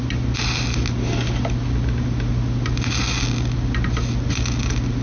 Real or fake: real